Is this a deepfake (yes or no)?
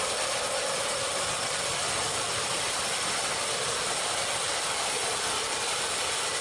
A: no